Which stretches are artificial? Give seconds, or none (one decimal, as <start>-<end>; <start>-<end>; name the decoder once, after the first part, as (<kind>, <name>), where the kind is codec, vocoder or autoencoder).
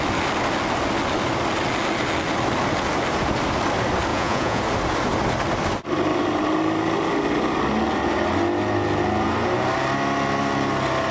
4.1-4.6 (vocoder, Vocos)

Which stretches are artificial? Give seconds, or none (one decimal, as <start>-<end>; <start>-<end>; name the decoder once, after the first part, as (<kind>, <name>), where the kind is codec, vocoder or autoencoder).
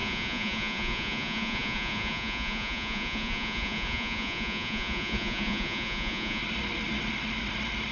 0.0-6.4 (vocoder, Vocos)